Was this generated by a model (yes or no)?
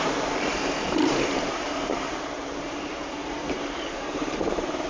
yes